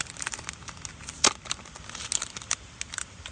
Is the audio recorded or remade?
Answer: recorded